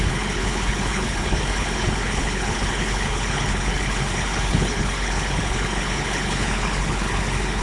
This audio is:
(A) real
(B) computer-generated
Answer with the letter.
B